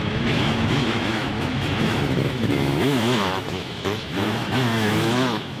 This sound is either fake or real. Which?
fake